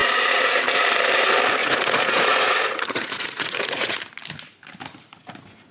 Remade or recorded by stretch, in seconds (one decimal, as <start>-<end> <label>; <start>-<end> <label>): 0.0-0.6 remade; 0.6-1.6 recorded; 1.6-4.0 remade; 4.0-5.7 recorded